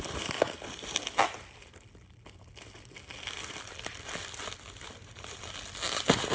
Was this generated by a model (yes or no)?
no